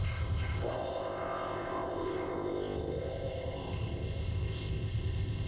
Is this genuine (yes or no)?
no